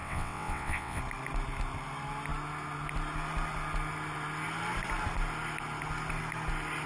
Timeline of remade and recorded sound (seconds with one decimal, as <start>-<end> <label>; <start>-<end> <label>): 0.0-1.0 remade; 1.0-6.9 recorded